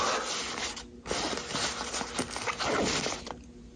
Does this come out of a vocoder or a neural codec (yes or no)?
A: no